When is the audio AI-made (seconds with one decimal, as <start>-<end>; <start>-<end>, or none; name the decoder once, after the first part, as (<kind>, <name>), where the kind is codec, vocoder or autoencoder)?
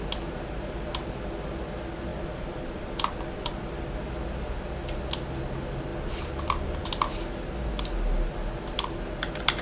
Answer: 2.1-3.9 (vocoder, BigVGAN v2); 5.9-6.8